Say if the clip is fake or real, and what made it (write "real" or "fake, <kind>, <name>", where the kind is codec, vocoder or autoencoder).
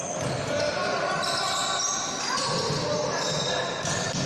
real